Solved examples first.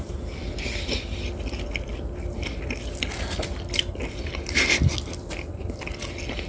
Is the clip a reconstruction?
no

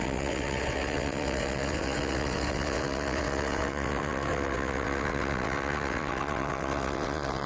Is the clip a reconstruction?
yes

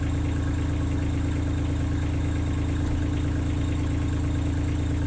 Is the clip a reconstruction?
no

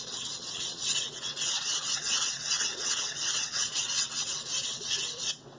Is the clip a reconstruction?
yes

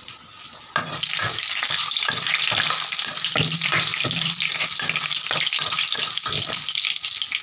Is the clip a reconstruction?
no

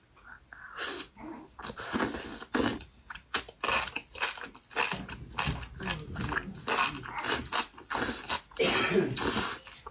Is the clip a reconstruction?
no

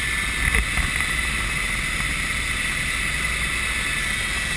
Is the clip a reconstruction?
no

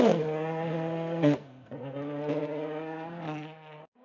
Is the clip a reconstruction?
yes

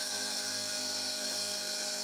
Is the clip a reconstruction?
yes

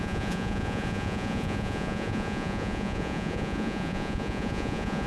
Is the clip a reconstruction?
yes